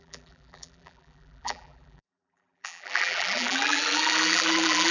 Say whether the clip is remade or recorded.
remade